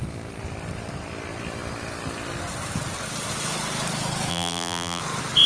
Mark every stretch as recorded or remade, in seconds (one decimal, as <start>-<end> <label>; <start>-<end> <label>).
0.0-4.3 recorded; 4.3-5.0 remade; 5.0-5.5 recorded